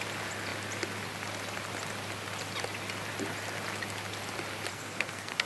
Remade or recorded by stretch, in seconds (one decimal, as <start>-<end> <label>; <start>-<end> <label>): 0.0-4.7 recorded; 4.7-5.5 remade